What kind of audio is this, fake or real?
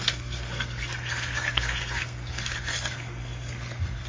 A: fake